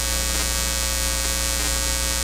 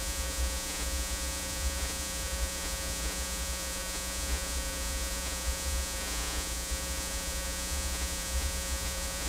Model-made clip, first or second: second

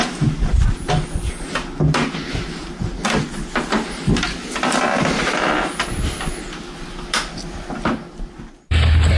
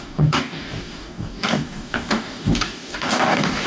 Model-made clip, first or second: second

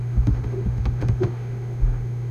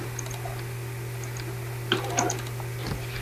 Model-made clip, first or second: first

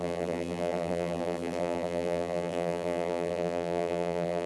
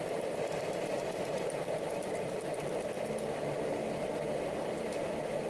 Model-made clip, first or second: first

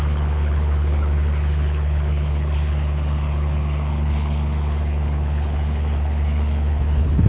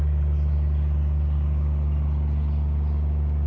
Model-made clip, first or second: first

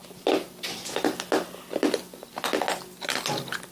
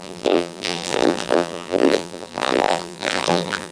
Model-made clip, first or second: second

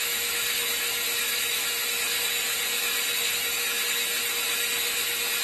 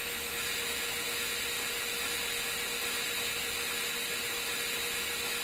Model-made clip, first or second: first